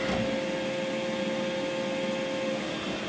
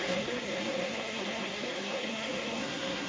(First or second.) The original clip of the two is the first